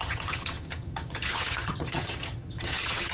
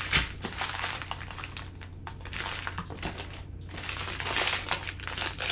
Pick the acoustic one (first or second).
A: second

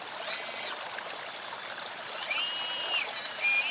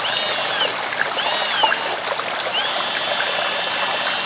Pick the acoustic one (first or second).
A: second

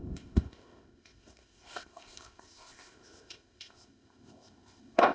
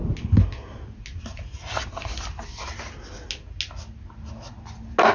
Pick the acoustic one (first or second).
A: second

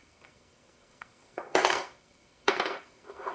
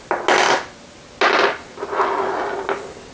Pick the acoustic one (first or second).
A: second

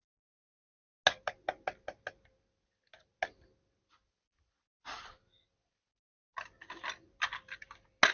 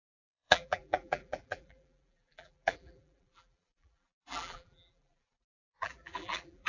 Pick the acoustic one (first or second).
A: first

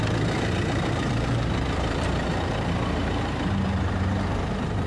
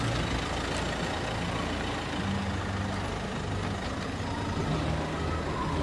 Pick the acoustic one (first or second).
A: second